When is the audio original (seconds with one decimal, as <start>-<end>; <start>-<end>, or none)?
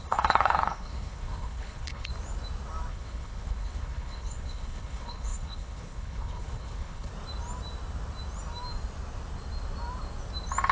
2.1-2.9; 7.1-10.7